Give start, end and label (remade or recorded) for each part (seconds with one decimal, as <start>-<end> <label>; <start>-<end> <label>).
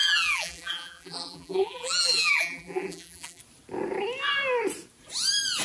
0.0-3.4 remade; 3.4-5.6 recorded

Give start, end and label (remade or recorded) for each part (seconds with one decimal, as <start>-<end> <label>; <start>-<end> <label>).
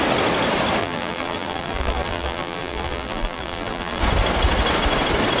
0.0-0.8 recorded; 0.8-4.0 remade; 4.0-5.4 recorded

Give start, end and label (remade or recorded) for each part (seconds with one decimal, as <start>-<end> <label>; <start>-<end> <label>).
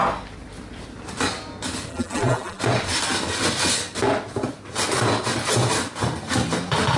0.0-1.9 recorded; 1.9-2.6 remade; 2.6-7.0 recorded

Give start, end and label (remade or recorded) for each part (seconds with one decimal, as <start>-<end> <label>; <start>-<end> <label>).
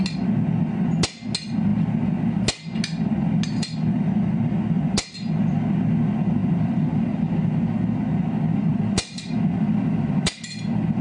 0.0-6.4 recorded; 6.4-7.3 remade; 7.3-8.7 recorded; 8.7-10.4 remade; 10.4-11.0 recorded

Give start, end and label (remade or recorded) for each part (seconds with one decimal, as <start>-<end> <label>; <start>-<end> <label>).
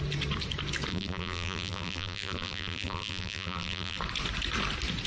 0.0-0.9 recorded; 0.9-4.0 remade; 4.0-5.1 recorded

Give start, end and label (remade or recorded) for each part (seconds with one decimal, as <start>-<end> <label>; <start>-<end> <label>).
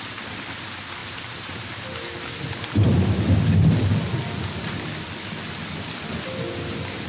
0.0-1.0 recorded; 1.0-1.7 remade; 1.7-7.1 recorded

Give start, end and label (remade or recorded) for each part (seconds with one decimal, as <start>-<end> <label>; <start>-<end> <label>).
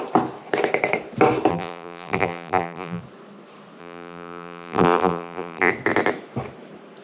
0.0-1.5 recorded; 1.5-3.0 remade; 3.0-3.8 recorded; 3.8-5.7 remade; 5.7-7.0 recorded